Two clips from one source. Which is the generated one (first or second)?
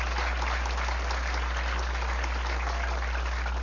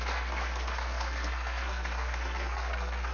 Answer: second